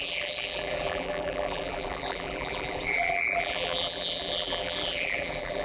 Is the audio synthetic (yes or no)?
yes